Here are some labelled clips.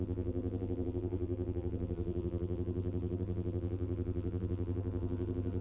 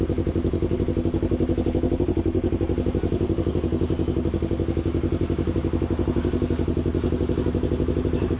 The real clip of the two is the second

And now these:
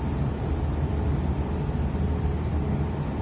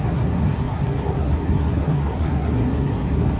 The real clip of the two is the first